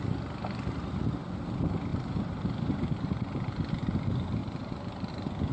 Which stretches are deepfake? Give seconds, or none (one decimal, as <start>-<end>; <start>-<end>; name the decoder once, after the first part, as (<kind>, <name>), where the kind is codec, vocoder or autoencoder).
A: 1.9-3.7 (vocoder, BigVGAN v2); 4.4-5.1